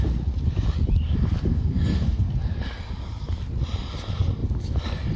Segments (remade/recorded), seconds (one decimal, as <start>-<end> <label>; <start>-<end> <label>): 0.0-1.5 recorded; 1.5-2.3 remade; 2.3-5.2 recorded